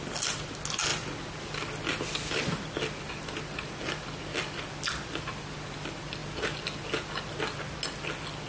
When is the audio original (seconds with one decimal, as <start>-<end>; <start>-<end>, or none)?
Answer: 0.0-8.5